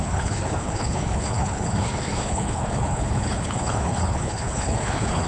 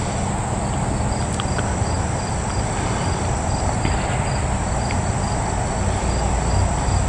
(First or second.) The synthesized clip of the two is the first